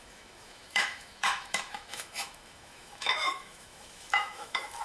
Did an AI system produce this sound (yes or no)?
yes